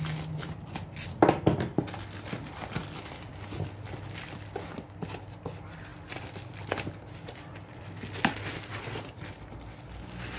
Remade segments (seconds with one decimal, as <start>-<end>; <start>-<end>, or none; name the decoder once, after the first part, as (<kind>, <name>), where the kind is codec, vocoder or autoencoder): none